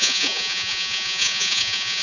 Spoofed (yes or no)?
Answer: yes